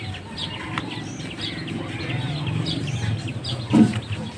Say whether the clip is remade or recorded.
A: recorded